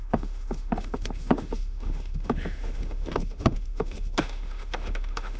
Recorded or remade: remade